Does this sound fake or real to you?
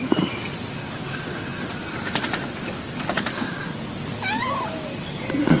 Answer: real